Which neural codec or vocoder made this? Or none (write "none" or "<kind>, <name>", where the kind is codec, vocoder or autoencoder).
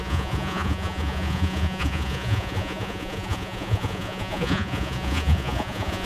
vocoder, Vocos